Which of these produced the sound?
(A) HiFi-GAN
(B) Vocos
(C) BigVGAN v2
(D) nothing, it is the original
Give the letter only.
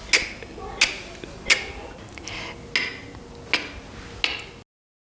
D